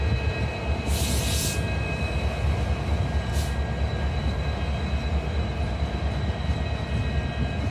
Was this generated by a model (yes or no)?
no